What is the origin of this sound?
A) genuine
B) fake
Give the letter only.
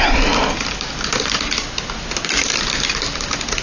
A